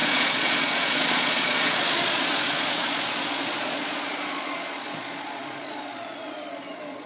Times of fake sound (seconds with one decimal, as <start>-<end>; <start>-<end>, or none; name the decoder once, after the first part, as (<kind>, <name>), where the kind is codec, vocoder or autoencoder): 0.0-7.1 (vocoder, Vocos)

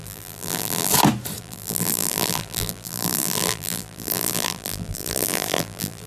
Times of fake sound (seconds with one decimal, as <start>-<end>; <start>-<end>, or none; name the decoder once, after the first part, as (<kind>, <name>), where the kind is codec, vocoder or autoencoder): 0.0-0.9 (vocoder, BigVGAN v2); 1.4-6.1

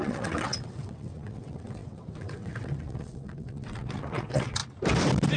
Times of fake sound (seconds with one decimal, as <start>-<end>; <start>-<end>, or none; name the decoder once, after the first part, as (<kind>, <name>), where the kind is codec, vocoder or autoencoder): 0.0-4.6 (vocoder, WaveNeXt)

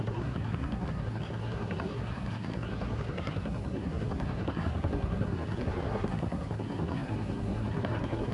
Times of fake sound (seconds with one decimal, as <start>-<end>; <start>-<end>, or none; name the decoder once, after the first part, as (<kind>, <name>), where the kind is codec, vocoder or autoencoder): 0.0-8.3 (codec, SNAC)

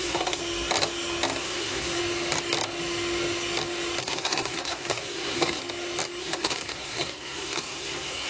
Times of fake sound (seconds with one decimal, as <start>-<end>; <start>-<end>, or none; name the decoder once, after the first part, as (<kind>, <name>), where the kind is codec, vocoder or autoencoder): 0.0-0.4 (codec, SNAC); 1.4-2.0; 4.0-5.6; 6.2-8.3

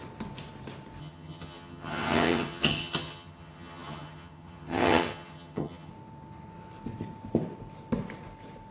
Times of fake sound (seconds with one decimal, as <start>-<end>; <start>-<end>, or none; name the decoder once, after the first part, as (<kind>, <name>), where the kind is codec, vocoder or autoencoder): 1.0-5.9 (vocoder, HiFi-GAN)

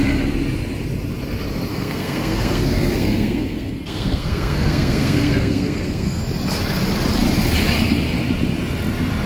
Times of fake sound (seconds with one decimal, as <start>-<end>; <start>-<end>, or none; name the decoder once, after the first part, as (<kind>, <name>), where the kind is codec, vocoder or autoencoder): 1.7-6.2 (codec, SNAC)